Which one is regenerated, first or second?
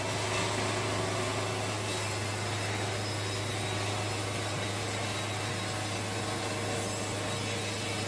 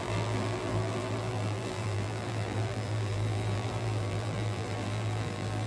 second